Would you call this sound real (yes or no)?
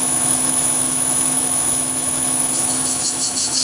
no